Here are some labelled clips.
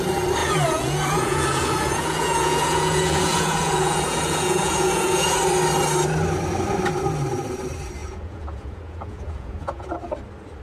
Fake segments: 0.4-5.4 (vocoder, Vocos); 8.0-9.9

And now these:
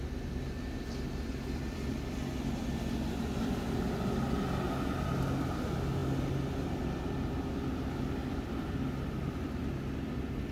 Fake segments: none

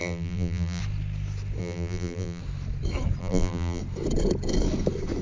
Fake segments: 0.0-0.8 (vocoder, BigVGAN v2); 1.6-2.4; 3.2-3.8

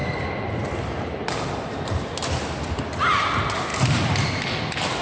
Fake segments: none

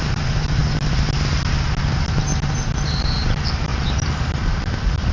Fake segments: 0.0-0.6 (vocoder, BigVGAN v2); 1.8-2.3; 3.0-3.7

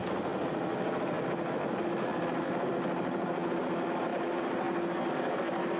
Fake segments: none

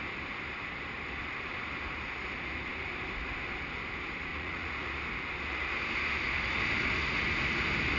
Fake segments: 4.3-4.9 (vocoder, Vocos)

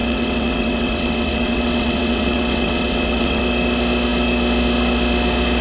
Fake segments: 0.0-3.4 (vocoder, WaveNeXt)